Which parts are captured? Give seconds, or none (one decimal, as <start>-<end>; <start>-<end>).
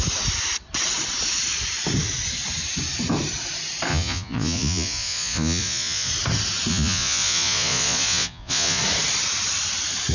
0.0-3.9; 6.1-6.7; 8.8-10.1